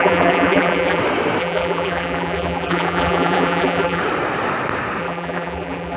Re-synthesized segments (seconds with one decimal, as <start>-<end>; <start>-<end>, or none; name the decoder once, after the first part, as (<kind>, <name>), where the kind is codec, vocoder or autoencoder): 0.0-1.0 (vocoder, BigVGAN v2); 1.4-4.0; 5.0-6.0